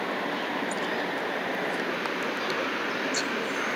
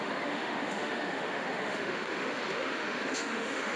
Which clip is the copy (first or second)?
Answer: second